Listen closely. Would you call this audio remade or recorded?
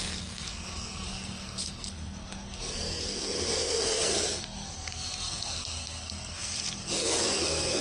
remade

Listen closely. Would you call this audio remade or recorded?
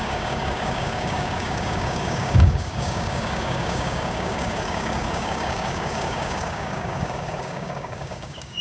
remade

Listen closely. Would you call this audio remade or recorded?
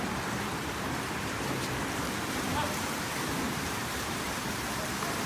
remade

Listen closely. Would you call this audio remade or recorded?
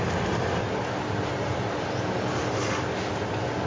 recorded